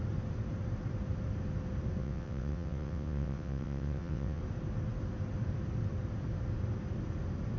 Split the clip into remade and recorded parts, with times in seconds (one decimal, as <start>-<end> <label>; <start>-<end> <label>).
0.0-2.0 recorded; 2.0-4.4 remade; 4.4-7.6 recorded